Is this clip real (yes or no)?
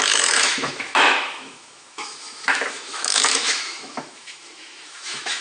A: no